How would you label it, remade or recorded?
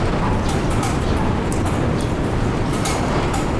recorded